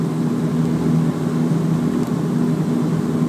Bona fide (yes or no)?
yes